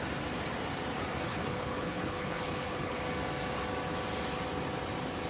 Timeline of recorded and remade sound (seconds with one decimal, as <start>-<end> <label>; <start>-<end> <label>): 0.0-1.3 recorded; 1.3-3.0 remade; 3.0-5.3 recorded